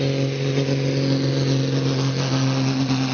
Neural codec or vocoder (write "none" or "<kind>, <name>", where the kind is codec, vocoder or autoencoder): none